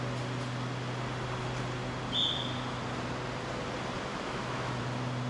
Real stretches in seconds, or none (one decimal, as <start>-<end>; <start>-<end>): 0.0-4.1; 4.8-5.3